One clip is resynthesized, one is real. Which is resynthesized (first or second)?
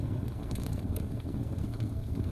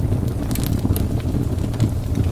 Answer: first